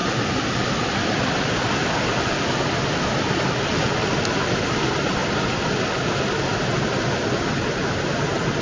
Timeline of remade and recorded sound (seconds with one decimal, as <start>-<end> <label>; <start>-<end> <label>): 0.0-8.6 recorded